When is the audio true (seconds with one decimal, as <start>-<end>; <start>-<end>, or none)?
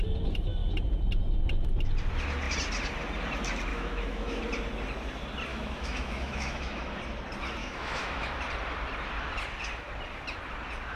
0.0-3.7; 4.4-5.5; 7.0-7.6; 8.4-11.0